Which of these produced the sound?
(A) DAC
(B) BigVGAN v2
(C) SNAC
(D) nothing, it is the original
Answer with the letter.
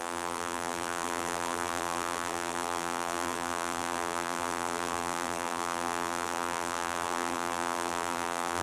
B